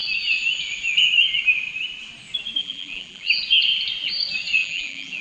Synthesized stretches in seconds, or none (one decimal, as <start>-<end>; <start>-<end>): 2.6-3.4; 4.6-5.2